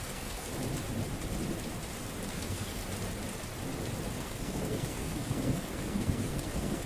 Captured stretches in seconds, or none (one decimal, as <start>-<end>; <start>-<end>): 0.5-2.3; 2.8-4.2